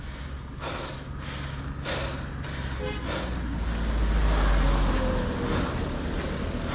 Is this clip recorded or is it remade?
recorded